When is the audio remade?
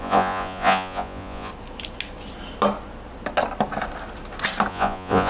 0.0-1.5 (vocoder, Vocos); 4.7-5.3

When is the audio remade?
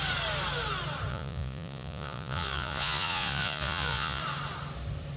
1.1-4.2 (vocoder, Vocos)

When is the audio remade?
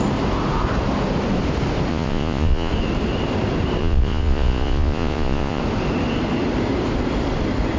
1.9-2.7 (vocoder, Vocos); 3.8-5.6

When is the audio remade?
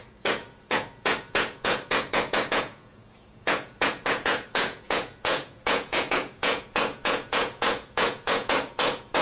0.0-9.2 (vocoder, Vocos)